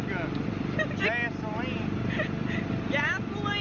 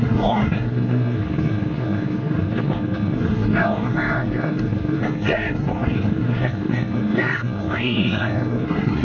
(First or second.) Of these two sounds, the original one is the first